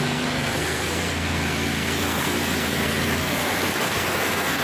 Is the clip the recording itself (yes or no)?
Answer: no